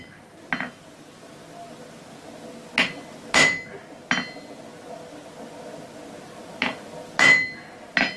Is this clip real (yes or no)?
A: yes